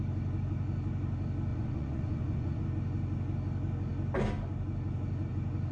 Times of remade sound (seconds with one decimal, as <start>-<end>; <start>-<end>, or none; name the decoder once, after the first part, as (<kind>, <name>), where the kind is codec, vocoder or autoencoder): 1.5-2.6 (vocoder, Vocos)